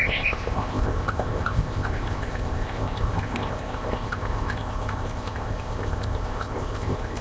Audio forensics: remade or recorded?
remade